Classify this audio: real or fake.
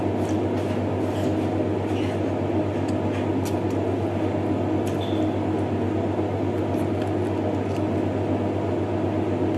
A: real